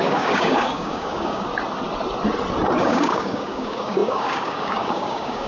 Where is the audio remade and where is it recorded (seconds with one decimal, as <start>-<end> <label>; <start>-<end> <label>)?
0.0-1.5 remade; 1.5-2.8 recorded; 2.8-5.5 remade